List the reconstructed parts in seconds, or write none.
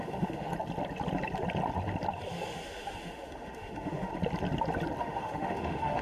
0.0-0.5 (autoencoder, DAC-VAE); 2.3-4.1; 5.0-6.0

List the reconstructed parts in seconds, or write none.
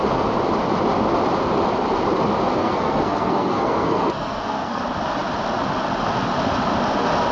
2.6-4.8 (codec, SNAC)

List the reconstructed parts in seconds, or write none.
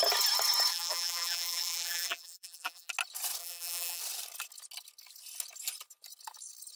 0.7-2.9 (vocoder, BigVGAN v2); 3.4-4.0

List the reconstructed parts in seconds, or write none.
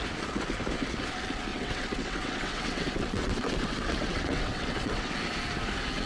1.5-5.1 (vocoder, WaveNeXt)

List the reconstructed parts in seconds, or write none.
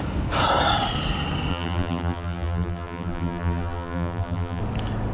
1.5-4.6 (vocoder, BigVGAN v2)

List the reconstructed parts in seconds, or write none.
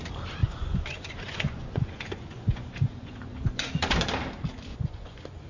0.4-3.7 (vocoder, Vocos); 4.7-5.5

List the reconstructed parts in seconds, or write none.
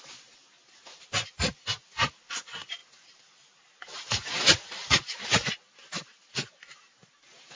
none